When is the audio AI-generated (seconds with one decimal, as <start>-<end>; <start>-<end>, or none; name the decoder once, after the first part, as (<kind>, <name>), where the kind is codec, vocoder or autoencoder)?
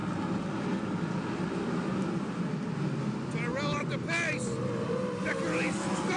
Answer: none